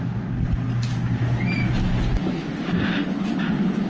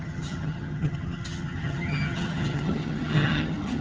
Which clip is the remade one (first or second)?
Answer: second